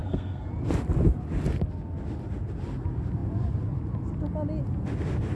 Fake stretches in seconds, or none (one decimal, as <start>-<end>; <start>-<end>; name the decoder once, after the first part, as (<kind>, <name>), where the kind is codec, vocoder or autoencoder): 0.0-0.5 (codec, SNAC)